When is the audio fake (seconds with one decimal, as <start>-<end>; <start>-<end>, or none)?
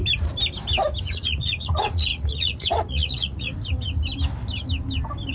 1.0-3.5